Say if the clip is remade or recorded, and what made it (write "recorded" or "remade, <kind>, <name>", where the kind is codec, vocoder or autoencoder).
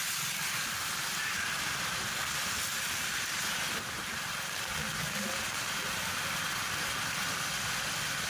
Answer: recorded